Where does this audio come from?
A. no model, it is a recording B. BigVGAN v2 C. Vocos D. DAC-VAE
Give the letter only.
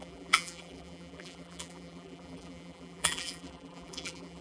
B